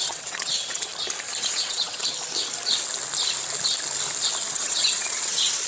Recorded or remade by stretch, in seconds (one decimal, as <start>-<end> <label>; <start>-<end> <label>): 0.0-0.9 remade; 0.9-1.5 recorded; 1.5-2.0 remade; 2.0-4.5 recorded; 4.5-5.7 remade